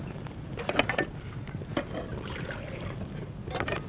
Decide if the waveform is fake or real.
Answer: real